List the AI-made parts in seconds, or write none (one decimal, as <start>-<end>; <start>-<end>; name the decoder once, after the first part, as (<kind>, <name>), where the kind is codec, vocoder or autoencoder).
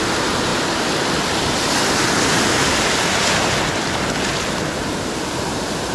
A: none